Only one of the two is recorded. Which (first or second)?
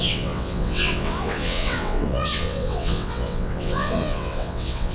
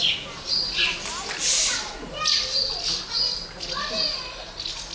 second